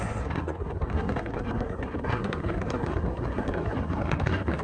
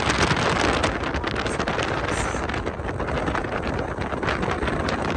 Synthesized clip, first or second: first